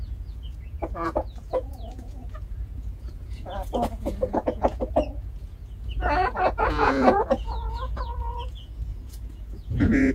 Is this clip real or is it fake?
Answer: fake